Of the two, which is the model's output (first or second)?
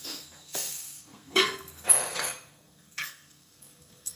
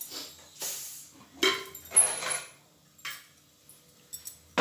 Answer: first